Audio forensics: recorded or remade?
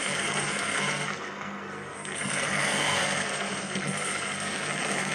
remade